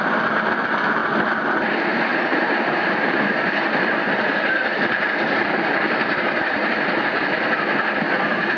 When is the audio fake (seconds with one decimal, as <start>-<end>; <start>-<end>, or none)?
2.1-6.8